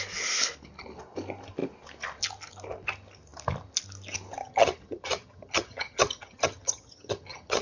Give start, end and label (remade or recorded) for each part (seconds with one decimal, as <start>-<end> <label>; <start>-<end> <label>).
0.0-4.4 recorded; 4.4-7.6 remade